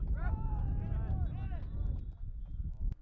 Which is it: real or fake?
real